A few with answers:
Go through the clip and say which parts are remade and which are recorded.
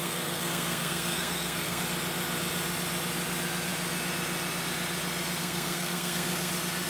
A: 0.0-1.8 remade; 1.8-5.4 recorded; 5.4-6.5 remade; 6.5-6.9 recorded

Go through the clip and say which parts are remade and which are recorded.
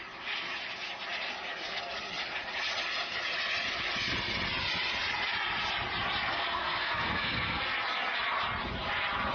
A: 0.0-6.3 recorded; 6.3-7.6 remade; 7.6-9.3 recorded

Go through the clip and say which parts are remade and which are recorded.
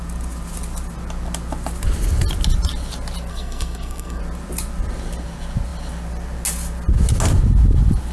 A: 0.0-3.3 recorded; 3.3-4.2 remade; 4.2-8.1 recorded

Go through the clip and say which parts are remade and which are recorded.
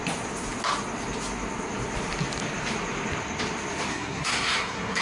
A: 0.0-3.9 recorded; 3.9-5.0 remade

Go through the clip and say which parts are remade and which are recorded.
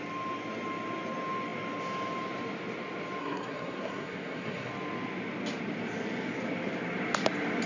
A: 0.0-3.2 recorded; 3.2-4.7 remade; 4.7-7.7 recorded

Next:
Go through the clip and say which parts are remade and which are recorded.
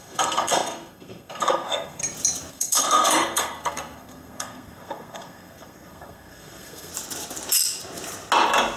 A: 0.0-2.0 remade; 2.0-2.5 recorded; 2.5-6.9 remade; 6.9-8.8 recorded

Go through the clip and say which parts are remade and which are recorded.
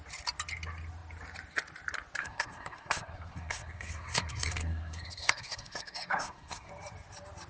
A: 0.0-2.2 recorded; 2.2-6.7 remade; 6.7-7.5 recorded